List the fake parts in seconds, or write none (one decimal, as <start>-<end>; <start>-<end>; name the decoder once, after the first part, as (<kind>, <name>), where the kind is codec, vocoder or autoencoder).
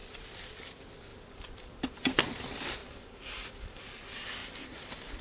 1.1-2.2 (vocoder, BigVGAN v2); 2.8-4.0; 4.4-5.2